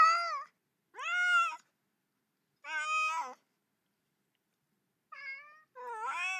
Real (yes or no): yes